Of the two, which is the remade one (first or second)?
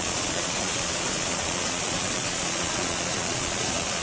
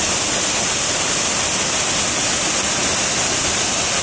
first